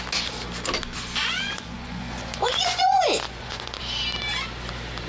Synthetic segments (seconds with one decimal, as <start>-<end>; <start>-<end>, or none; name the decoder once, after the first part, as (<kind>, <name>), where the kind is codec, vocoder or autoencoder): 1.2-3.8 (vocoder, Vocos)